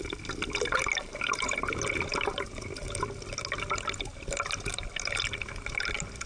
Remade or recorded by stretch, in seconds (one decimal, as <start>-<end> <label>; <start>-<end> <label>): 0.0-1.1 recorded; 1.1-1.7 remade; 1.7-6.3 recorded